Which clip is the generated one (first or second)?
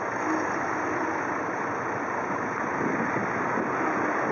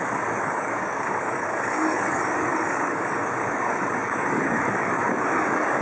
second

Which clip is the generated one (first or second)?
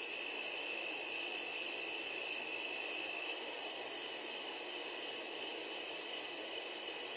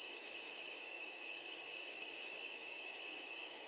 second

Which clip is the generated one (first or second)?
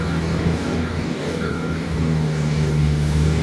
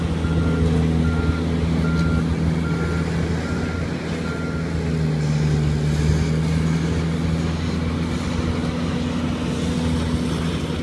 first